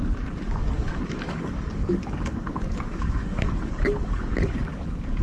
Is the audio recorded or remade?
remade